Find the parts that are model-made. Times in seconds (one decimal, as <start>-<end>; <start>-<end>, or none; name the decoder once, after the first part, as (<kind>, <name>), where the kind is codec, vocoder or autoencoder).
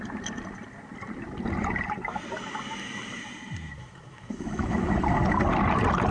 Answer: 3.8-4.9 (autoencoder, DAC-VAE)